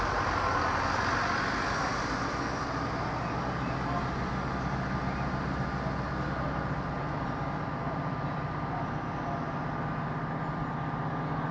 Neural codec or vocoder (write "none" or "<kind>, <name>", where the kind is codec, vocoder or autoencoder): none